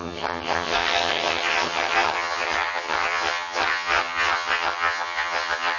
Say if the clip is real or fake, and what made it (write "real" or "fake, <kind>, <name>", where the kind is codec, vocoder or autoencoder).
fake, vocoder, HiFi-GAN